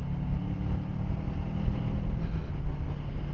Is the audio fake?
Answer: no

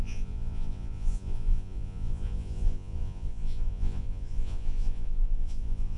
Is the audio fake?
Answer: yes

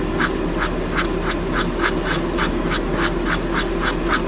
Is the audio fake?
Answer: no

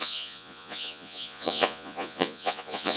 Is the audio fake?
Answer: yes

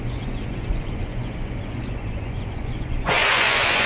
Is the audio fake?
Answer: yes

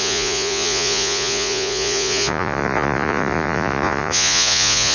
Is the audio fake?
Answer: yes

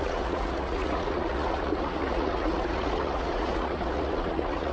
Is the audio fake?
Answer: yes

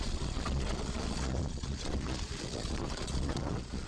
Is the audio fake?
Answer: yes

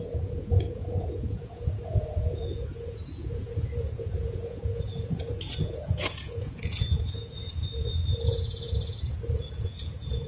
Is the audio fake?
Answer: yes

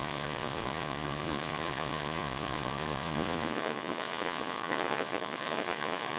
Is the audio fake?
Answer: yes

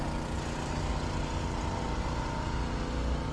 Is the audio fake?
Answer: no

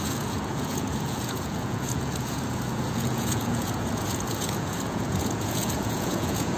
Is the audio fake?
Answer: yes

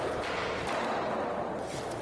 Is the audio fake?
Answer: no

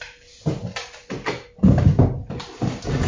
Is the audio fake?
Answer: no